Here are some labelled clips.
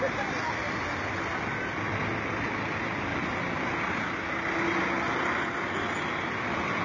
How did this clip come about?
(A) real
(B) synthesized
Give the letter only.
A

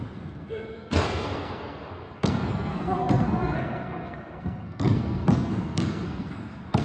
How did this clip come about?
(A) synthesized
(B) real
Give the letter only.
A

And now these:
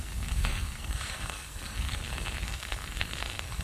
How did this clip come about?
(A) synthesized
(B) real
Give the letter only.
A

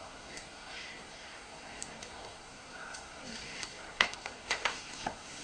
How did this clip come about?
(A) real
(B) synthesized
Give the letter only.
B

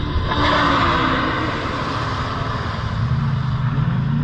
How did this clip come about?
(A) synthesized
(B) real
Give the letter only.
B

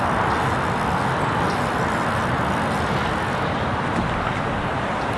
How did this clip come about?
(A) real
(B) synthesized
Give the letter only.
A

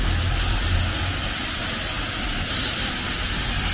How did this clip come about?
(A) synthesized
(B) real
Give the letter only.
B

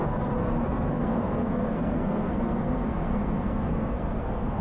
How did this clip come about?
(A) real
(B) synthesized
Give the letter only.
B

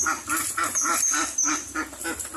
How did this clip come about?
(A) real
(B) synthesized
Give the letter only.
A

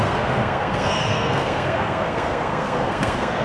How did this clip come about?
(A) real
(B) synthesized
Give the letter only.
B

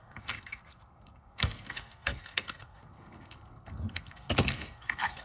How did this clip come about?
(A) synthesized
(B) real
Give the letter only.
A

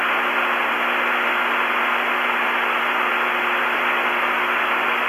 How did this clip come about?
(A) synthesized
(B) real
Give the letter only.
B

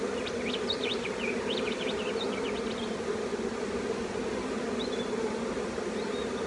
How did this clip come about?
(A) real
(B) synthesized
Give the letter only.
A